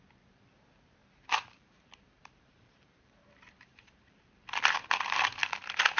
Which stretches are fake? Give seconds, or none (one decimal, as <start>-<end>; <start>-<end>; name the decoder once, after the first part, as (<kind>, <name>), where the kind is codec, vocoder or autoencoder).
1.0-4.6 (vocoder, BigVGAN v2)